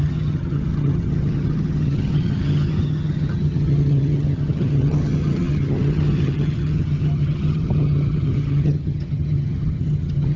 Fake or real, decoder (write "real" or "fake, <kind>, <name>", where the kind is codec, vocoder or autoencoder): fake, vocoder, HiFi-GAN